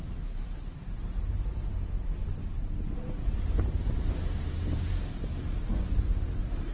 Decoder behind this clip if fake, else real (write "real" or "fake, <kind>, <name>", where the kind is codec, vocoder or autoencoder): fake, vocoder, BigVGAN v2